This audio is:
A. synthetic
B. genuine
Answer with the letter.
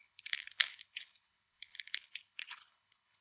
A